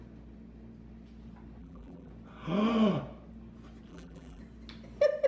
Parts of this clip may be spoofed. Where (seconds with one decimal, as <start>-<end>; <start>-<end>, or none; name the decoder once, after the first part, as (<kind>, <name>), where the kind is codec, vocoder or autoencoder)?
1.6-2.1 (vocoder, BigVGAN v2); 3.9-4.4